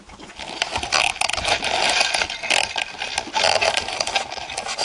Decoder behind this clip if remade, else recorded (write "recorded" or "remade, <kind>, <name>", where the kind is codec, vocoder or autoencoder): recorded